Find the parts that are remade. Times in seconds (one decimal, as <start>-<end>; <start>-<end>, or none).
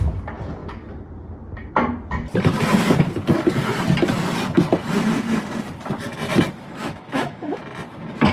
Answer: 6.8-7.6